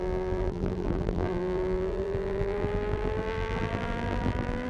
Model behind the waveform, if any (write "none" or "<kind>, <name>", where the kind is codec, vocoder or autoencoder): vocoder, BigVGAN v2